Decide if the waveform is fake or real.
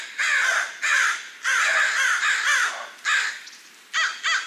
real